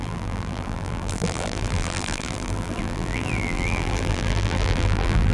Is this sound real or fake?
fake